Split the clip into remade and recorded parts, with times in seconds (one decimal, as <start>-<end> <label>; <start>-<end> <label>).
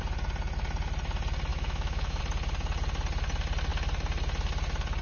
0.0-1.5 recorded; 1.5-2.2 remade; 2.2-5.0 recorded